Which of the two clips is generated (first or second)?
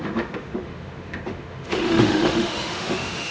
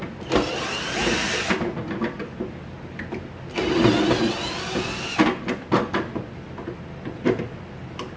first